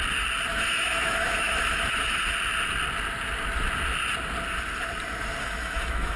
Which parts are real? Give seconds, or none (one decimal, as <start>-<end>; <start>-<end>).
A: 0.0-0.5; 2.2-5.4